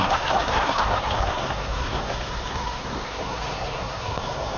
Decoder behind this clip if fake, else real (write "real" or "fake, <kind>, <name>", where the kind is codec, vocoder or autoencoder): fake, codec, SNAC